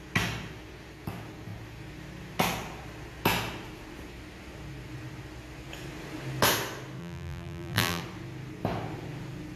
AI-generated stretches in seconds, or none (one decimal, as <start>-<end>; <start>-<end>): 7.0-8.0